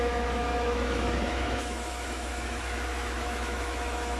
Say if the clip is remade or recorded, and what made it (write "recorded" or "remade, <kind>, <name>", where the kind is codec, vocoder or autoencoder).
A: remade, autoencoder, DAC-VAE